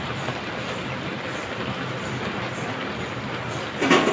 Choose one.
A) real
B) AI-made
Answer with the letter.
A